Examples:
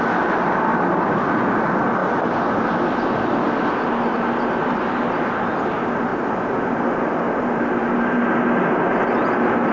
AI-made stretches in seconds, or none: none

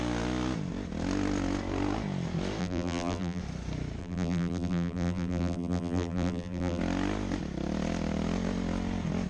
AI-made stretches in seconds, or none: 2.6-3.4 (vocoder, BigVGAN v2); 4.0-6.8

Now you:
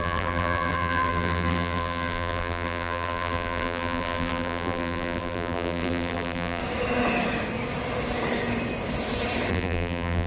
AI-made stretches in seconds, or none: 0.0-6.6 (vocoder, BigVGAN v2); 9.5-10.3

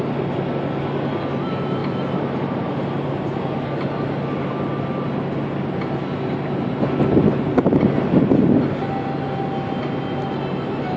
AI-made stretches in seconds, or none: 1.8-2.7 (vocoder, BigVGAN v2)

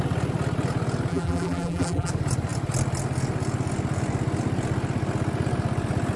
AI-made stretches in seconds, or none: 1.1-2.1 (vocoder, BigVGAN v2)